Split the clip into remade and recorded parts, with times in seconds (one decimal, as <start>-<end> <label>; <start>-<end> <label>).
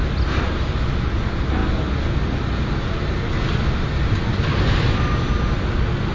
0.0-6.1 recorded